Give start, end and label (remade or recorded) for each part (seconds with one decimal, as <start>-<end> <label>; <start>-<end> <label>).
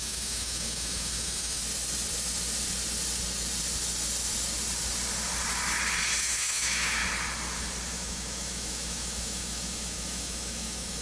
0.0-1.6 remade; 1.6-6.2 recorded; 6.2-7.0 remade; 7.0-7.9 recorded; 7.9-11.0 remade